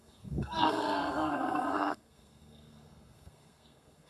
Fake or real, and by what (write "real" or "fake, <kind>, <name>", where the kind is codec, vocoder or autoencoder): fake, codec, SNAC